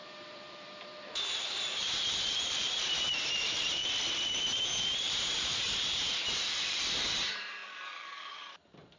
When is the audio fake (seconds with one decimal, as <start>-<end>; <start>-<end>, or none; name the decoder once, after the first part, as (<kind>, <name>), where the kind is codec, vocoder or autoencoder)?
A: 0.0-3.8 (vocoder, BigVGAN v2); 4.6-7.6; 8.5-9.0